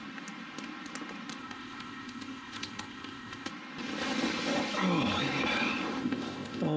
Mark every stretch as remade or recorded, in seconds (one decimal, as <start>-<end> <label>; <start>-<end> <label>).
0.0-1.4 recorded; 1.4-3.5 remade; 3.5-6.0 recorded; 6.0-6.8 remade